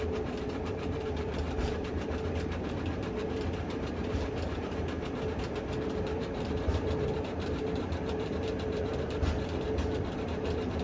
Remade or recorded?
remade